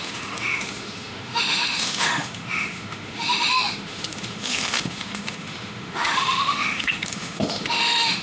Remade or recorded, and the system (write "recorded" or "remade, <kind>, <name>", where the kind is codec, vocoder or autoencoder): remade, autoencoder, DAC-VAE